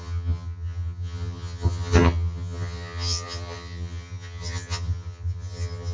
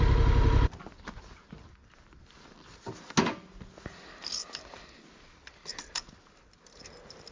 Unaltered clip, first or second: second